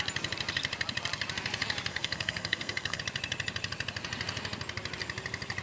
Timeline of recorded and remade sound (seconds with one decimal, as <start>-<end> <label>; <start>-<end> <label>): 0.0-1.9 recorded; 1.9-3.0 remade; 3.0-5.6 recorded